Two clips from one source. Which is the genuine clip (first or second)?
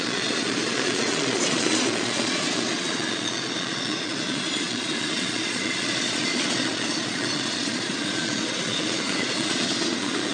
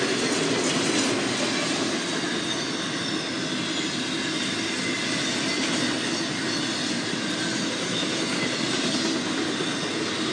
second